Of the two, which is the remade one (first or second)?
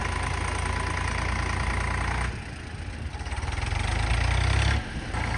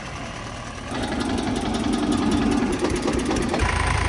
second